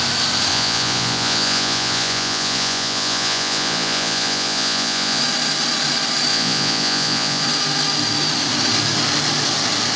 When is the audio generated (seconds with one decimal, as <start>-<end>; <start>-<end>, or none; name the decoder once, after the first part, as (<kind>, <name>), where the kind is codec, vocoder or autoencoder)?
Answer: 0.5-5.2 (vocoder, Vocos); 6.3-7.4